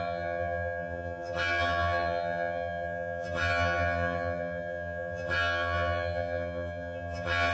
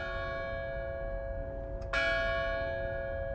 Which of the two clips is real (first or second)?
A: second